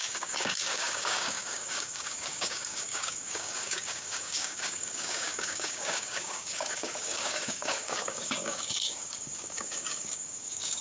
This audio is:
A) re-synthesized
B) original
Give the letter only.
A